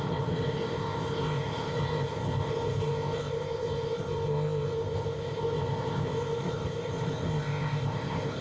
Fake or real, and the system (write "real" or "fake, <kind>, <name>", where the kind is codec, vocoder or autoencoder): fake, codec, ZipCodec